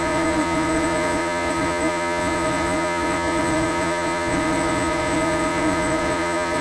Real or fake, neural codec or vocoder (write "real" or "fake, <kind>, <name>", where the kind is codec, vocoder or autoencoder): fake, vocoder, Vocos